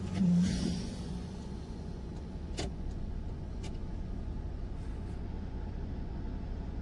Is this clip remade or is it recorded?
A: remade